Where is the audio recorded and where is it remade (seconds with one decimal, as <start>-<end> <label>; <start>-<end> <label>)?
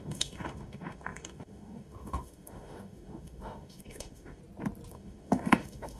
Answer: 0.0-4.4 remade; 4.4-4.9 recorded; 4.9-6.0 remade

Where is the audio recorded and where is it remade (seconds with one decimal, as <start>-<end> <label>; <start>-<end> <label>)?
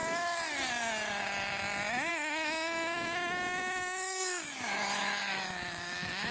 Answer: 0.0-2.1 recorded; 2.1-6.3 remade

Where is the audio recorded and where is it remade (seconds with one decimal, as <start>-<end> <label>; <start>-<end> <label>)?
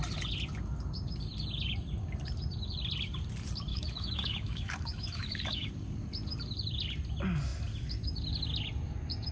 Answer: 0.0-3.7 recorded; 3.7-5.7 remade; 5.7-9.3 recorded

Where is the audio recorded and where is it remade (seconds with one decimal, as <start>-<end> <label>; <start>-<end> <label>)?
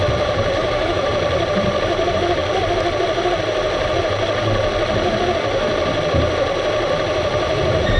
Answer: 0.0-0.6 recorded; 0.6-1.1 remade; 1.1-8.0 recorded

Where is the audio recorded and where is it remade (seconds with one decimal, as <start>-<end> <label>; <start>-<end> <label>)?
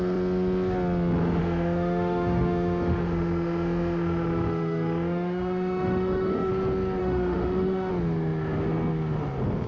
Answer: 0.0-1.2 recorded; 1.2-6.5 remade; 6.5-7.0 recorded; 7.0-7.9 remade; 7.9-9.7 recorded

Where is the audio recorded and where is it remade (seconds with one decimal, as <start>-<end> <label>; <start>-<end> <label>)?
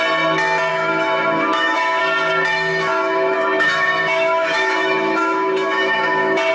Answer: 0.0-0.7 recorded; 0.7-2.0 remade; 2.0-2.5 recorded; 2.5-6.5 remade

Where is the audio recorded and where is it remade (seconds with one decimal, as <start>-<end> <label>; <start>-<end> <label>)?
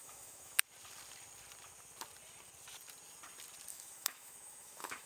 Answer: 0.0-0.6 remade; 0.6-3.7 recorded; 3.7-5.1 remade